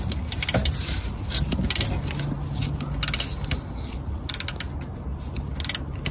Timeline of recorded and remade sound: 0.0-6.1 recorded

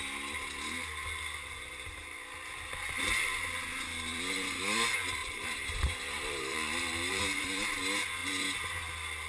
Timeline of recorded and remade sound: 0.0-5.2 recorded; 5.2-7.2 remade; 7.2-9.3 recorded